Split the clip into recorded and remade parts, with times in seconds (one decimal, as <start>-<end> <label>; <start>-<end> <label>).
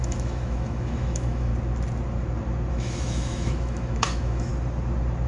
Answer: 0.0-1.5 remade; 1.5-2.7 recorded; 2.7-4.5 remade; 4.5-5.3 recorded